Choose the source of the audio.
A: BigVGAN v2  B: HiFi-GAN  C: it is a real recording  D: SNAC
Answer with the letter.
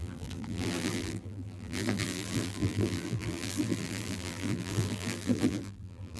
A